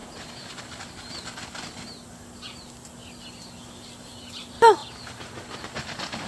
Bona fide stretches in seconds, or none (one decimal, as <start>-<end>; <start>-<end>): 0.0-6.3